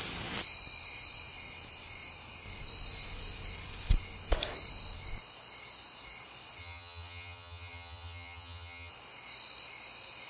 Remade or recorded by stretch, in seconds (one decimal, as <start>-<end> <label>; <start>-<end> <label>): 0.0-6.6 recorded; 6.6-8.9 remade; 8.9-10.3 recorded